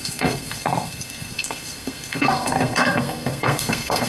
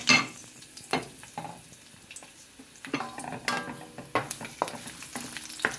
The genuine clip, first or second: second